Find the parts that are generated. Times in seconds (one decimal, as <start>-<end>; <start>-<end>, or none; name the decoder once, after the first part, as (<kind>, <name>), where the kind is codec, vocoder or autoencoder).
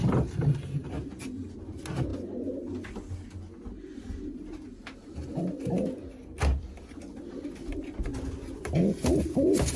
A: none